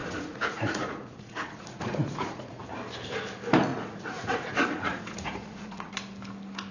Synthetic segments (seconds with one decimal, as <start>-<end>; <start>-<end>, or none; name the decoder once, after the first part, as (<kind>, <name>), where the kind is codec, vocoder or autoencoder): 0.0-2.6 (vocoder, Vocos); 3.7-5.9